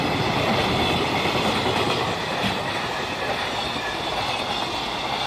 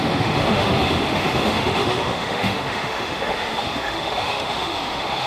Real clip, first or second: first